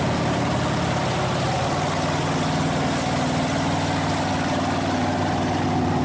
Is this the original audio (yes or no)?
yes